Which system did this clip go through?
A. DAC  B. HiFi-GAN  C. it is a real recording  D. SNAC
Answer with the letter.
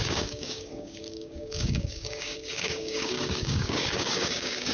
A